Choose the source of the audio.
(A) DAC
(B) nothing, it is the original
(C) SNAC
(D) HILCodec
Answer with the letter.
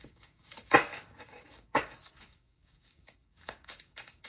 A